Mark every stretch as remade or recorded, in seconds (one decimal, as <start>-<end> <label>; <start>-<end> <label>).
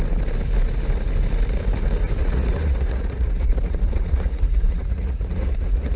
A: 0.0-2.2 recorded; 2.2-6.0 remade